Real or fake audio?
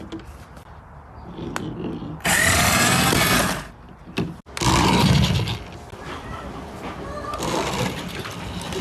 real